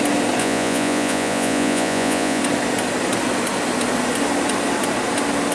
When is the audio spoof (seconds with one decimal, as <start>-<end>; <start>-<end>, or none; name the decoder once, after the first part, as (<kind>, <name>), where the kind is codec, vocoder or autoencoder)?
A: 0.4-2.4 (vocoder, Vocos)